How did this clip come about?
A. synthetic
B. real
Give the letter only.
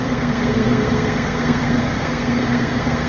A